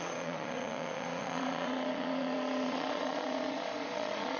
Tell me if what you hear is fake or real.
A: fake